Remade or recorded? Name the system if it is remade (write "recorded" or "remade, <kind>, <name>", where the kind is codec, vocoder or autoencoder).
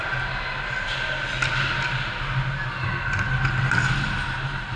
recorded